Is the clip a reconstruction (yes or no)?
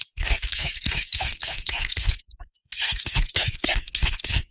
yes